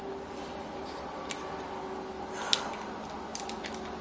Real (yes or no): yes